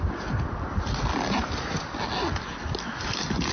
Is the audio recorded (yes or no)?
yes